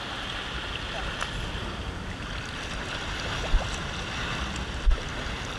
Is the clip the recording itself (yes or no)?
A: yes